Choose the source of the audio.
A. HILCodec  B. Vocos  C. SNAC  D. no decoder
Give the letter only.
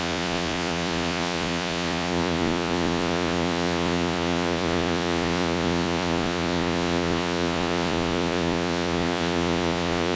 B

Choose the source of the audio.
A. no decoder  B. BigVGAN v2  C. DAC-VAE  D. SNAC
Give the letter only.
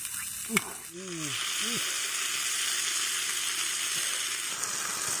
A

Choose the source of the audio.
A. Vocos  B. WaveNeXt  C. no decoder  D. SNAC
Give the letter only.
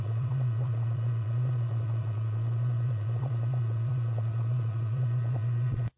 A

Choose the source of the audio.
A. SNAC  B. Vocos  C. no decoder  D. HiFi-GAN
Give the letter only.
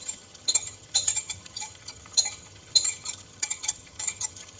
D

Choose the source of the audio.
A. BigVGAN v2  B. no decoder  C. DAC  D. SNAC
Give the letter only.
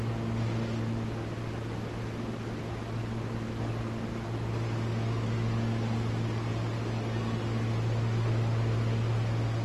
B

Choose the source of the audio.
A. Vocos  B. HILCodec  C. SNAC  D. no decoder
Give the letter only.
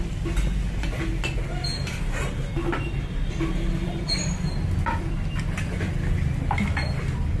D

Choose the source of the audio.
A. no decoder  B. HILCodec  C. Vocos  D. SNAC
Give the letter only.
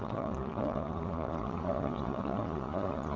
C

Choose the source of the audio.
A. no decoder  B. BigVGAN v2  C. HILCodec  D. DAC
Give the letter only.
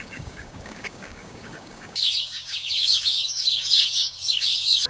D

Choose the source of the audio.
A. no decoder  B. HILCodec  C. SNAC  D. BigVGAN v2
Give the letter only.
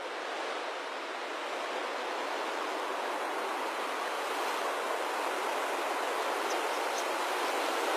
A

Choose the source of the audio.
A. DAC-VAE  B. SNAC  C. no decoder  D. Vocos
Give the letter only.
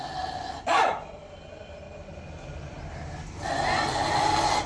C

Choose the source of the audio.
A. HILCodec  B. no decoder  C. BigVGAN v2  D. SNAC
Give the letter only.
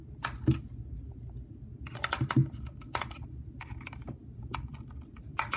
B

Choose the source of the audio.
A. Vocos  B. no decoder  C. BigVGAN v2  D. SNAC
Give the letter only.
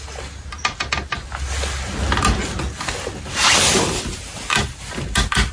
B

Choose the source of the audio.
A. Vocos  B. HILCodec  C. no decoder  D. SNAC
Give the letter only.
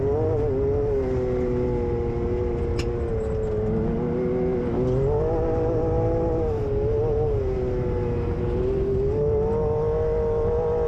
C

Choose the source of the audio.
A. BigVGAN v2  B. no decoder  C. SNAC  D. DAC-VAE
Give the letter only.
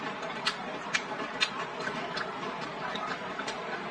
A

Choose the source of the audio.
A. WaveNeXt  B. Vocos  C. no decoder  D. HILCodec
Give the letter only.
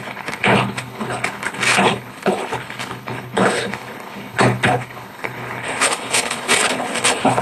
D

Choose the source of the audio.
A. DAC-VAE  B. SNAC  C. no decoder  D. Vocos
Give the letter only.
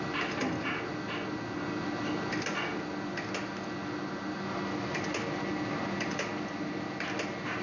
C